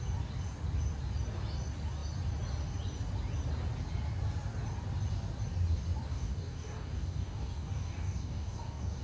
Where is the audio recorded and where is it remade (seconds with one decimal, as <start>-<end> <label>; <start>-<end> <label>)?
0.0-6.1 recorded; 6.1-9.0 remade